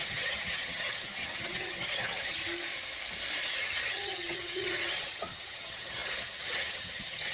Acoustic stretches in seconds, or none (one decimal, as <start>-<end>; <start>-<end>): 2.4-3.6